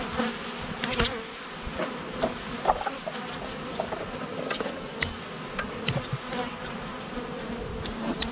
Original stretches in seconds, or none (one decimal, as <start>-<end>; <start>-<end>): 0.0-8.3

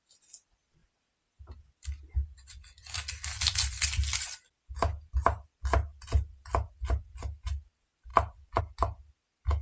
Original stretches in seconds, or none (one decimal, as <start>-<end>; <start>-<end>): 0.0-9.6

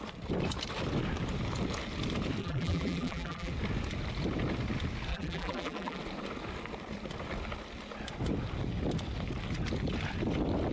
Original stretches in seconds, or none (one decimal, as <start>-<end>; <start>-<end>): 0.0-2.4; 3.5-5.1; 6.0-10.7